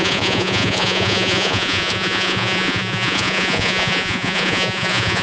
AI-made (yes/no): yes